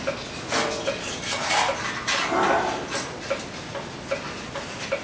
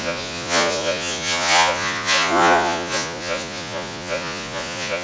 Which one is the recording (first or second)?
first